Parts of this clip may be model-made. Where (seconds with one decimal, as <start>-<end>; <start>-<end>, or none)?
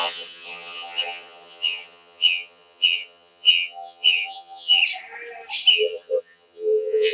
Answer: 0.0-4.8; 5.7-7.1